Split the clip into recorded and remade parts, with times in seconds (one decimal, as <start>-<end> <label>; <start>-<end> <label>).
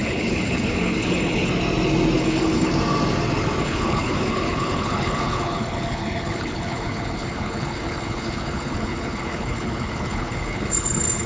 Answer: 0.0-1.5 remade; 1.5-2.2 recorded; 2.2-2.7 remade; 2.7-3.6 recorded; 3.6-11.3 remade